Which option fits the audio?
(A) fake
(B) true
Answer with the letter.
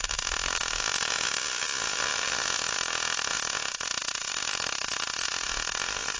B